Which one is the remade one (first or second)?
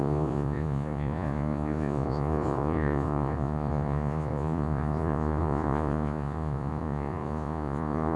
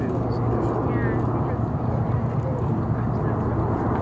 first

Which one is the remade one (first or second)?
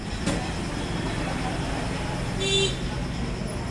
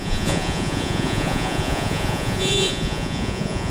second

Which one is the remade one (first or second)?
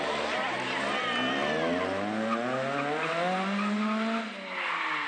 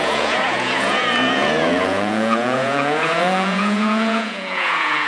second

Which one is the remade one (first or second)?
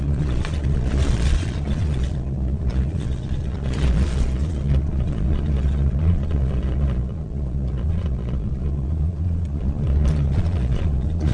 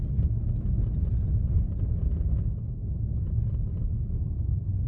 first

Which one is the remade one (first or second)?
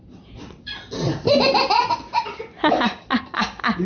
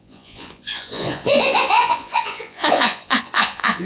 second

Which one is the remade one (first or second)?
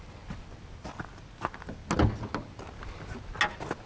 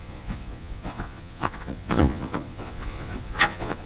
second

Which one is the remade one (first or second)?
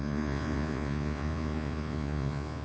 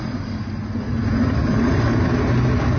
first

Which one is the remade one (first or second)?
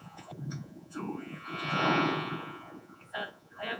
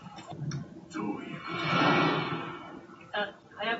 first